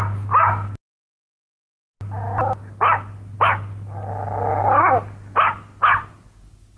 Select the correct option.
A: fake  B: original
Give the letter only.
B